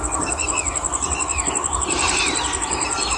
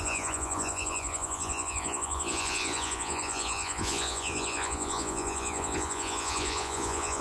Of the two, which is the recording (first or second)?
first